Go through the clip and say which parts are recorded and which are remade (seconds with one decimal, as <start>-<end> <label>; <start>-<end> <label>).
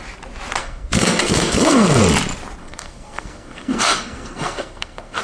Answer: 0.0-0.6 recorded; 0.6-2.0 remade; 2.0-2.6 recorded; 2.6-5.2 remade